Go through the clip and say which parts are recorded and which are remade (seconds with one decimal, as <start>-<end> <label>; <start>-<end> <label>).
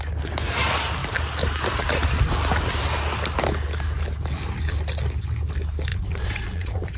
0.0-5.9 recorded; 5.9-7.0 remade